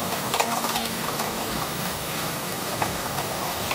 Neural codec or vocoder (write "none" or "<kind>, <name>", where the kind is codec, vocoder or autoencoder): codec, DAC